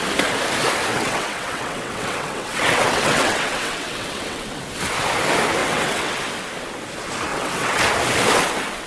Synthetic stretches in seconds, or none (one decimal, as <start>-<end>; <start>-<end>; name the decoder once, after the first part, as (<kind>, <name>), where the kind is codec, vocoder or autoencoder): 0.9-4.6 (vocoder, WaveNeXt); 5.6-6.2; 7.3-7.8